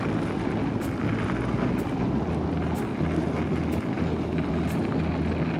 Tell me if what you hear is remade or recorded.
recorded